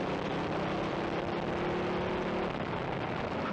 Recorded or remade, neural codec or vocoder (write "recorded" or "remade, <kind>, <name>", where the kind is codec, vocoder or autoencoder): recorded